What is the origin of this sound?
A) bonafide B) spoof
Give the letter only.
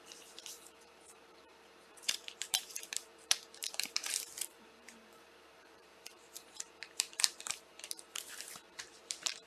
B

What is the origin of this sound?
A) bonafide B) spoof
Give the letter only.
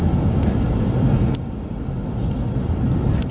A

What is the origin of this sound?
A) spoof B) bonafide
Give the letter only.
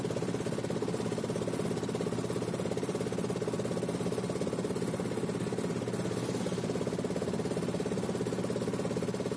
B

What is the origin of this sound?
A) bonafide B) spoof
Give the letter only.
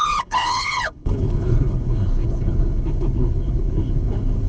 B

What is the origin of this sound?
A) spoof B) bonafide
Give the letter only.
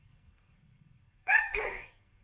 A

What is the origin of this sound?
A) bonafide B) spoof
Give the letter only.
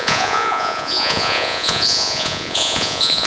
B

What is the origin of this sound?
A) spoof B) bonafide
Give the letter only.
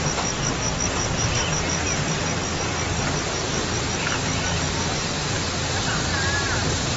B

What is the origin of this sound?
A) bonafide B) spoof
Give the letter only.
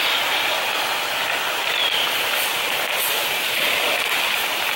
A